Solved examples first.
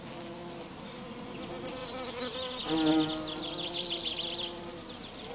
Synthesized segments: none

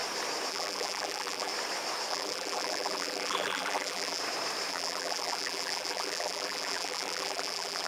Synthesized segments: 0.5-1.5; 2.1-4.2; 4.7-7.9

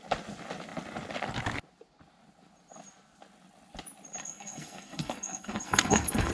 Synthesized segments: 4.2-6.3